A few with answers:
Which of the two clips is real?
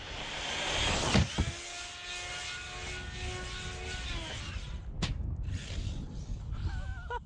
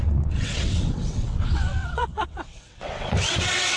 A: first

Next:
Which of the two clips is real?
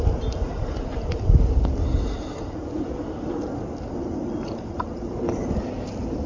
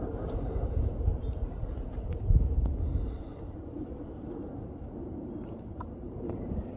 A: first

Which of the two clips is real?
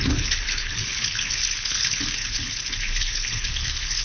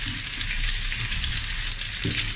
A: second